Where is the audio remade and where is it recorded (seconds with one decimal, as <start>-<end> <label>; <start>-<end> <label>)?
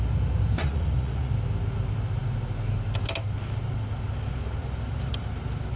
0.0-0.6 recorded; 0.6-1.3 remade; 1.3-5.8 recorded